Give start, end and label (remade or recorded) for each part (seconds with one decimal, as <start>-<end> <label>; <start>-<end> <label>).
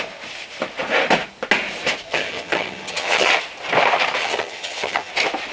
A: 0.0-2.1 recorded; 2.1-3.3 remade; 3.3-4.2 recorded; 4.2-5.1 remade; 5.1-5.5 recorded